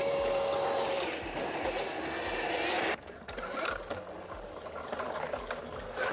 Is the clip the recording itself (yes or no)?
yes